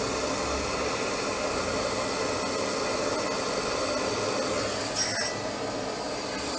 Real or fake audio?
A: real